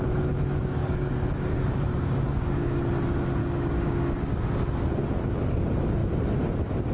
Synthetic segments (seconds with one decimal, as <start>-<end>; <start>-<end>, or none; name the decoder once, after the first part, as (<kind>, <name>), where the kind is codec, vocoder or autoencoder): 0.8-2.8 (codec, DAC); 3.4-4.3